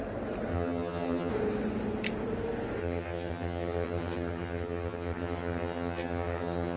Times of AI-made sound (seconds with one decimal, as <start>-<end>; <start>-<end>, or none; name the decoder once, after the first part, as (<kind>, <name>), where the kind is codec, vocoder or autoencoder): 0.5-1.3 (vocoder, HiFi-GAN); 2.8-6.8